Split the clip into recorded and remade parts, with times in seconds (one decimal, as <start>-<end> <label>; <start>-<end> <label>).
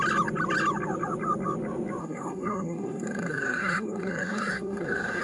0.0-2.0 recorded; 2.0-5.2 remade